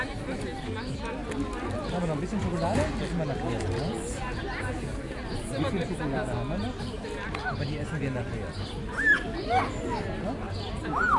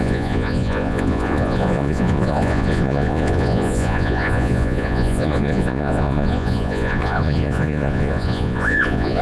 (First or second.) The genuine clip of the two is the first